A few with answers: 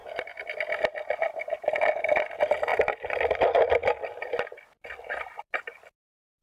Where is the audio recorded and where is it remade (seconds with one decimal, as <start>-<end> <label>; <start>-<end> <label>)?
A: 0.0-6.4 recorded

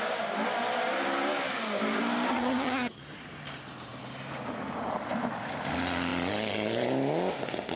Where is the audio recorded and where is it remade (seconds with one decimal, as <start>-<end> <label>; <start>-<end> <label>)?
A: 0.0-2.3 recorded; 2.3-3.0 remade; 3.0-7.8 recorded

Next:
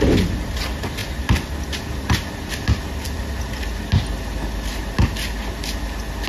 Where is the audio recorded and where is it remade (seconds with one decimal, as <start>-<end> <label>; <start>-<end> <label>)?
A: 0.0-6.3 recorded

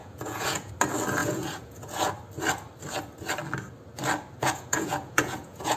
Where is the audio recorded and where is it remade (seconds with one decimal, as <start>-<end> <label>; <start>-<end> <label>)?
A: 0.0-0.7 remade; 0.7-1.2 recorded; 1.2-2.1 remade; 2.1-4.4 recorded; 4.4-5.8 remade

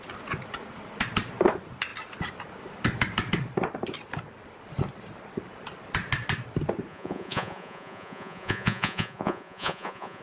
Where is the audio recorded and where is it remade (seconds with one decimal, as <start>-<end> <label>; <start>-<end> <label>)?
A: 0.0-6.9 recorded; 6.9-10.2 remade